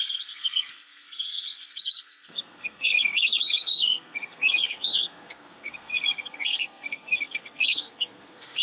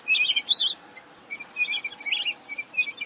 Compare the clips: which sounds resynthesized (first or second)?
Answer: first